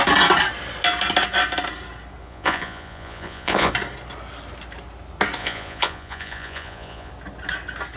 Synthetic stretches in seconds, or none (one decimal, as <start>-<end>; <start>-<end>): 2.2-3.7; 5.4-7.1